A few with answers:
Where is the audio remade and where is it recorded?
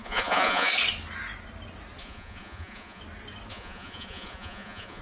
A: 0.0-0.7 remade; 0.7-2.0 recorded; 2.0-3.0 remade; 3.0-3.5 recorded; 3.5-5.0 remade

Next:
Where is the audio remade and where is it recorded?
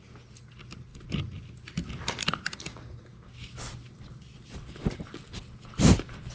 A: 0.0-6.3 recorded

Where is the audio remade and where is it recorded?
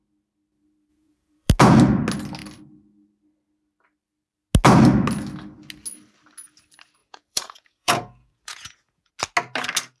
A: 0.0-0.9 recorded; 0.9-1.5 remade; 1.5-7.0 recorded; 7.0-9.1 remade; 9.1-10.0 recorded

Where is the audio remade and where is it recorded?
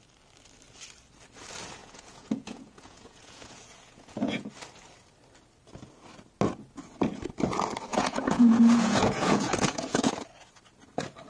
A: 0.0-1.8 recorded; 1.8-4.5 remade; 4.5-7.9 recorded; 7.9-10.1 remade; 10.1-11.3 recorded